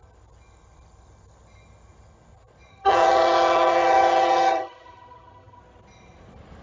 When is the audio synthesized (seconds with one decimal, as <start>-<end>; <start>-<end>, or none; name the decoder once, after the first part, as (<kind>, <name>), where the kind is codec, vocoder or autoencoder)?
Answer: 2.7-5.6 (vocoder, HiFi-GAN)